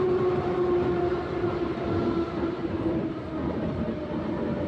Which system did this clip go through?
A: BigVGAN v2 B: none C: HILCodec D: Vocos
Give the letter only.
B